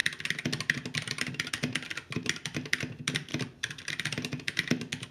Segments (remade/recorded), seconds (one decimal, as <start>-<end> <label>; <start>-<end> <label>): 0.0-5.1 recorded